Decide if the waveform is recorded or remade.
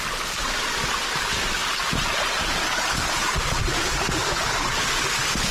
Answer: recorded